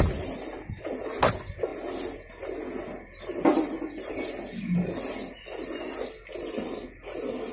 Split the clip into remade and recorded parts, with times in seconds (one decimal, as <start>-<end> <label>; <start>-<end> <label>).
0.0-7.5 recorded